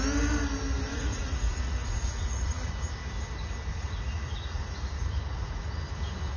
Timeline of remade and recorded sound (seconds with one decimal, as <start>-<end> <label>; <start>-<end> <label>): 0.0-0.9 recorded; 0.9-2.7 remade; 2.7-3.7 recorded; 3.7-5.6 remade; 5.6-6.4 recorded